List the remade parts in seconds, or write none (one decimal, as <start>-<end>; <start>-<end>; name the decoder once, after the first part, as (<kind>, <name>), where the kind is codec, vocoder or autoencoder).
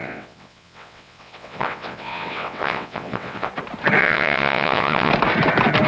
0.0-3.5 (vocoder, WaveNeXt); 4.0-5.1